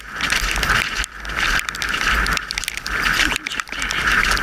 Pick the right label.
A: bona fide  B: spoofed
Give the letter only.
A